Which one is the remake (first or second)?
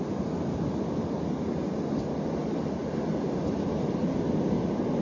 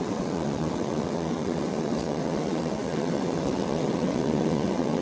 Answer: second